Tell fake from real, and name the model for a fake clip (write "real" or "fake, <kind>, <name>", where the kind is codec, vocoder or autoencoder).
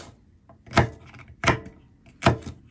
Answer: real